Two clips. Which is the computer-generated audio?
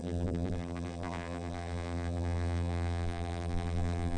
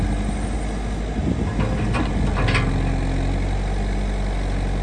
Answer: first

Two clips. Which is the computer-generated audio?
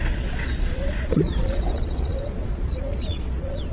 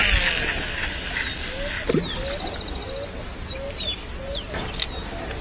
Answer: first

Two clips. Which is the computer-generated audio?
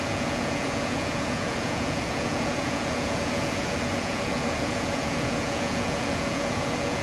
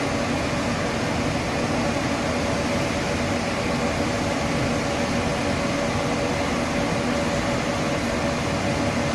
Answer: first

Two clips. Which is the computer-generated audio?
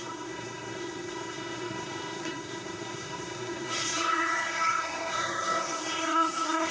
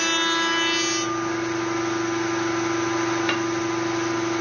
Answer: first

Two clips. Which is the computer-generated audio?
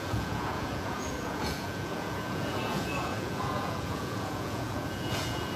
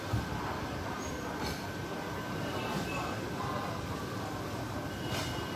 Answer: first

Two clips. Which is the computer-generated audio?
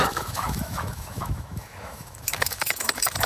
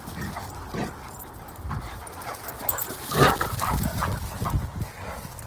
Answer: first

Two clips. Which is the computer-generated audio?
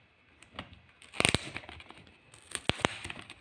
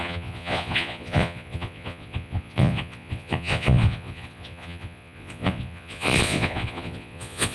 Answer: second